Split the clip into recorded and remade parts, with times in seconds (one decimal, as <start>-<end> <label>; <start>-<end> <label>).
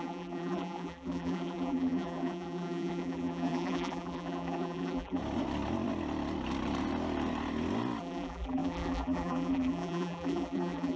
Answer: 0.0-5.2 remade; 5.2-8.0 recorded; 8.0-11.0 remade